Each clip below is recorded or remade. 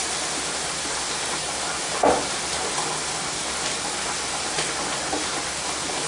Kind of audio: recorded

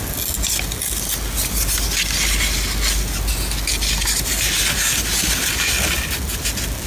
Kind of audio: recorded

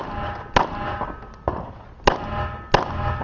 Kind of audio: recorded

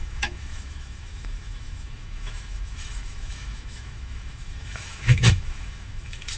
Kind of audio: remade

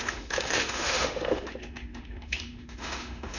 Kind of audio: remade